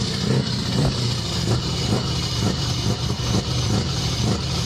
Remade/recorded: remade